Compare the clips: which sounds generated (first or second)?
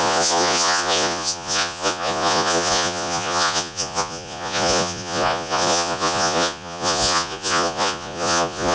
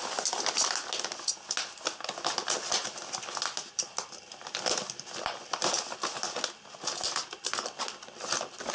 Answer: first